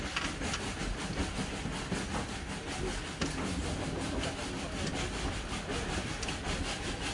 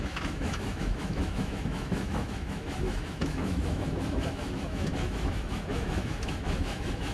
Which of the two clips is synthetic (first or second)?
second